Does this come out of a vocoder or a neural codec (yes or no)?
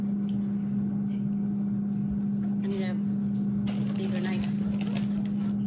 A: no